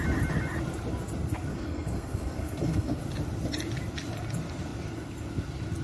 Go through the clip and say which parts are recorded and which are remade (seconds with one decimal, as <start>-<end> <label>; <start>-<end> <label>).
0.0-1.5 recorded; 1.5-3.0 remade; 3.0-5.8 recorded